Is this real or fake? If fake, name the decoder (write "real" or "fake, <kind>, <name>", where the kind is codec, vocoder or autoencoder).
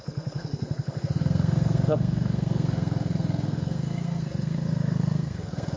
fake, codec, SNAC